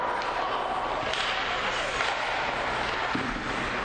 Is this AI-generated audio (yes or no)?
no